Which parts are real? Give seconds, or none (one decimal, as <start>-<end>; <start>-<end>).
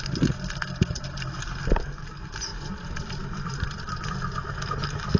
0.0-2.5; 4.1-5.2